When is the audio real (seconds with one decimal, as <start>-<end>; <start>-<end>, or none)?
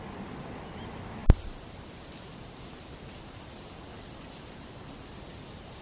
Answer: 0.0-5.8